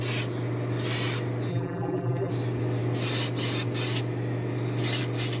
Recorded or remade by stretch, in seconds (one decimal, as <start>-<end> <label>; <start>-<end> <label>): 0.0-1.5 recorded; 1.5-2.3 remade; 2.3-5.4 recorded